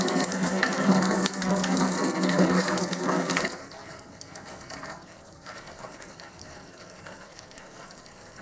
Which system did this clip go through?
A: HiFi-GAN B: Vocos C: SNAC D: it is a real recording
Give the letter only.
C